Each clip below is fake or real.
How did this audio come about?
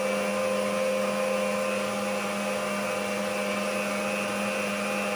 real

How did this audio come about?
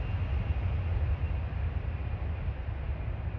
real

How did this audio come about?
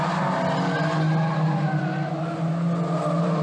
real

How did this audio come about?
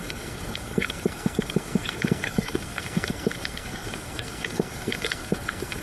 fake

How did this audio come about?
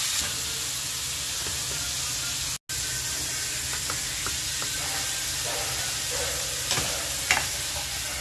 real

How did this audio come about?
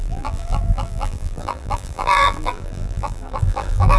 fake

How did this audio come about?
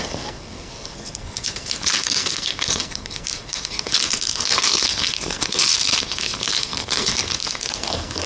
fake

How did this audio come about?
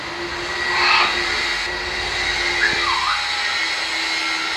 real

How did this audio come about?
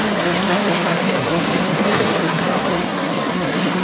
fake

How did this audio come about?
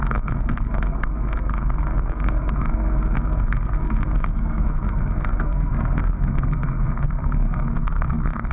fake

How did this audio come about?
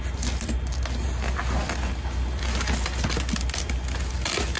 real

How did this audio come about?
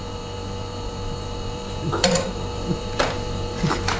fake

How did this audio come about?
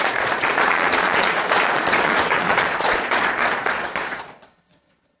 fake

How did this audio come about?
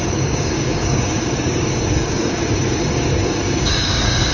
fake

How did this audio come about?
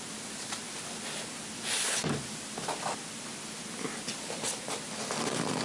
real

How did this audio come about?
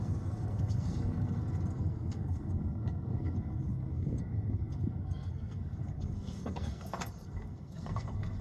fake